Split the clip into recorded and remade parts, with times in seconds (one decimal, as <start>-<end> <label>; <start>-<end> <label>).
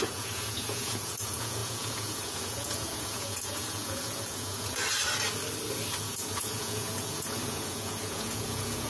0.0-4.8 remade; 4.8-6.0 recorded; 6.0-8.9 remade